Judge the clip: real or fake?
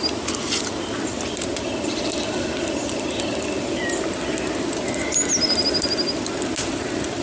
real